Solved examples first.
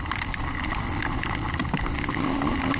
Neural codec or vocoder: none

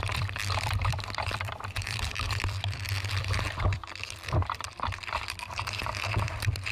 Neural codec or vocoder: vocoder, BigVGAN v2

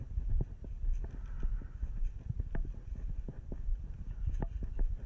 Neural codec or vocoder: none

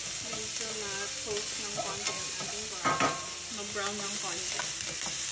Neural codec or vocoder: none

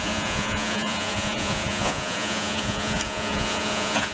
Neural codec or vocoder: vocoder, Vocos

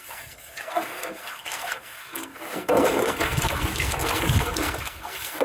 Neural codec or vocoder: codec, SNAC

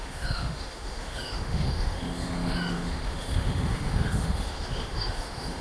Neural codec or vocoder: autoencoder, DAC-VAE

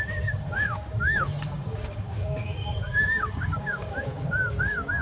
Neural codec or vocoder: codec, DAC